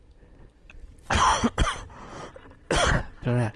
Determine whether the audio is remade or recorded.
recorded